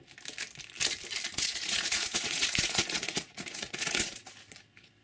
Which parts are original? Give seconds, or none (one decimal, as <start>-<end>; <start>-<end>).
0.0-1.3; 4.3-5.0